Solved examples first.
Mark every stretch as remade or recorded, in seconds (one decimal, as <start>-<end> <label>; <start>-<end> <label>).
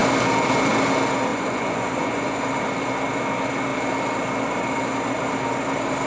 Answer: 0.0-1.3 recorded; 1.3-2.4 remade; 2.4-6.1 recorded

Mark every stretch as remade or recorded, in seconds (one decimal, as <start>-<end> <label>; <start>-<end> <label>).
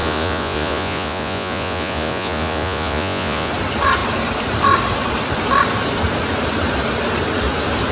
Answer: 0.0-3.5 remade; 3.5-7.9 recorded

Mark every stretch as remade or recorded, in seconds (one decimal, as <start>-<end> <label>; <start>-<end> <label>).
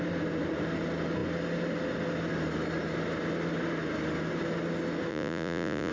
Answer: 0.0-5.1 recorded; 5.1-5.9 remade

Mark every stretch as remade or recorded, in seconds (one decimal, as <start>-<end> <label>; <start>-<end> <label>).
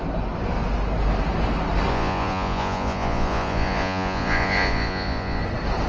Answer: 0.0-1.9 recorded; 1.9-5.4 remade; 5.4-5.9 recorded